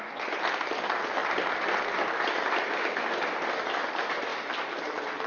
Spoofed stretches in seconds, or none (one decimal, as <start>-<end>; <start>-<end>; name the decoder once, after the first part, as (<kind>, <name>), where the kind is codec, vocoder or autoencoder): none